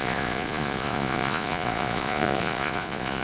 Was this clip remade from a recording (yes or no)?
yes